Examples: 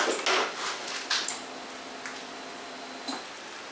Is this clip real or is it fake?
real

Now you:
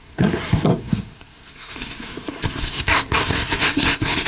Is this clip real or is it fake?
fake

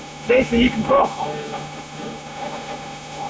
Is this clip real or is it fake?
fake